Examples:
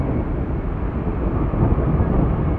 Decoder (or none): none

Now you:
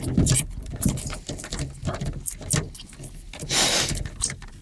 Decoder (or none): none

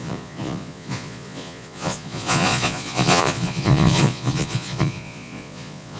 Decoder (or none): vocoder, Vocos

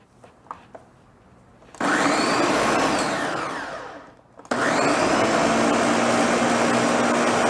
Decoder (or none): none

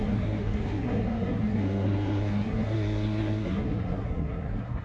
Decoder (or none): codec, SNAC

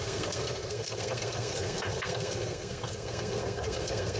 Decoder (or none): codec, SNAC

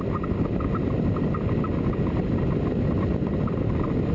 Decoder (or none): none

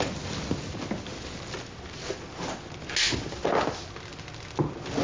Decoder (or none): none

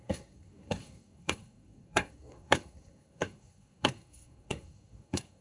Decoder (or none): codec, SNAC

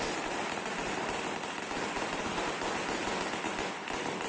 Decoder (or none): none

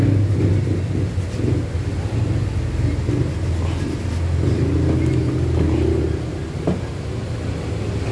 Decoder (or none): none